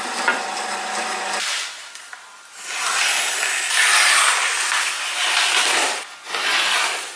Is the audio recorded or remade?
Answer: recorded